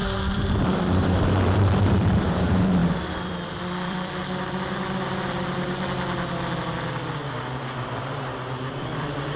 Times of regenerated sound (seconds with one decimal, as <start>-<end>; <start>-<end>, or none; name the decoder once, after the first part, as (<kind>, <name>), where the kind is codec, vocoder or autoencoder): 0.0-4.2 (vocoder, BigVGAN v2); 8.8-9.4